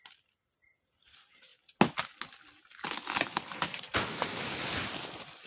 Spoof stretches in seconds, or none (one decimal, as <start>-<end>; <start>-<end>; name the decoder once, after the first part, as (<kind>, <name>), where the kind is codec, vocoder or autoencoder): none